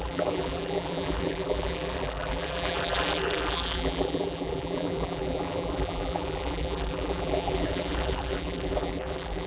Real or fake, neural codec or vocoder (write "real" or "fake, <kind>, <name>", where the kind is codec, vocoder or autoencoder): fake, vocoder, BigVGAN v2